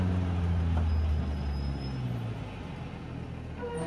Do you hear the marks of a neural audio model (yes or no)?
no